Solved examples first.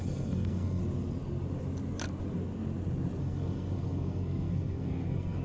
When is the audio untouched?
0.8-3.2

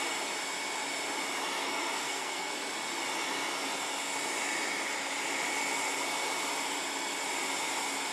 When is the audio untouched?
0.0-1.6; 2.5-8.1

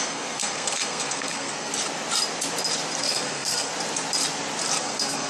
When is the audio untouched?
1.7-3.0; 3.7-4.8

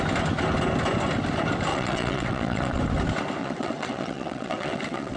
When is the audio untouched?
0.0-1.7; 2.8-3.4

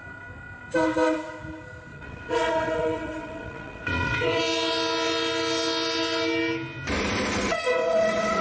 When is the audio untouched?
0.0-1.9; 4.4-7.5

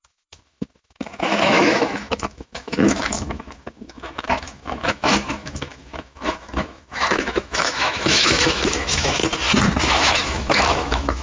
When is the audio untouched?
9.2-9.9

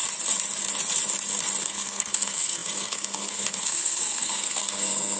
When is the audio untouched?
0.0-1.6

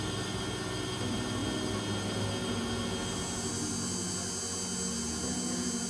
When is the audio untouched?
0.0-5.9